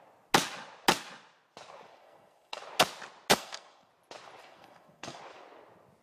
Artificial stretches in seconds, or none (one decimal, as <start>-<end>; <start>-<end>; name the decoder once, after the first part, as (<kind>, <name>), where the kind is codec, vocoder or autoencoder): 1.9-2.6 (codec, SNAC); 3.3-3.9; 4.4-5.2